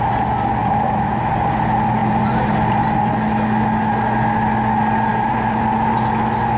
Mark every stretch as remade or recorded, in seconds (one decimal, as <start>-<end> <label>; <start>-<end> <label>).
0.0-0.6 recorded; 0.6-1.3 remade; 1.3-2.0 recorded; 2.0-3.1 remade; 3.1-5.1 recorded; 5.1-6.1 remade; 6.1-6.6 recorded